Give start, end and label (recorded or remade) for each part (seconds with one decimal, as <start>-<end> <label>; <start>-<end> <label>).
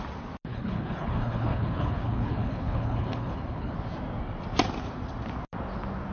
0.0-0.5 recorded; 0.5-3.7 remade; 3.7-6.1 recorded